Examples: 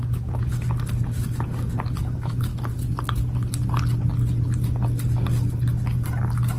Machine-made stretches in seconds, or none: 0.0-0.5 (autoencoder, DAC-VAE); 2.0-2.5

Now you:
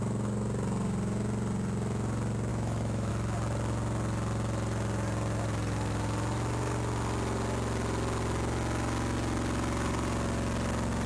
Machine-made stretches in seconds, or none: 2.5-3.1 (autoencoder, DAC-VAE)

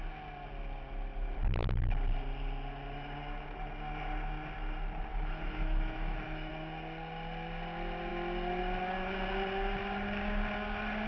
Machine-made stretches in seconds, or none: 5.1-6.5 (autoencoder, DAC-VAE)

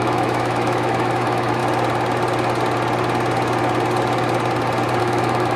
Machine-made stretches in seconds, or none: 0.0-1.6 (autoencoder, DAC-VAE); 5.0-5.6

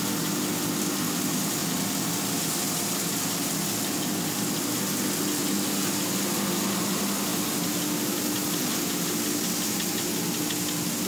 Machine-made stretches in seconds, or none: none